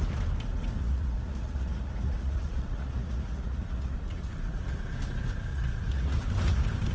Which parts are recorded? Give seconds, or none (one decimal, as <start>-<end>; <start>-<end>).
0.0-0.8; 4.8-5.5; 6.2-6.9